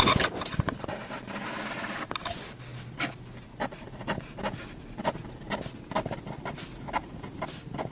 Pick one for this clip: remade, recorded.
recorded